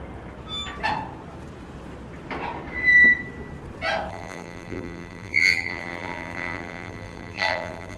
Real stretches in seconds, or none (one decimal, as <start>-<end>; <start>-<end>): 0.0-4.1